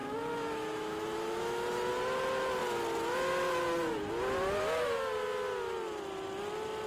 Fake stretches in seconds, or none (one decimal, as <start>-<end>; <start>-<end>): 0.0-1.9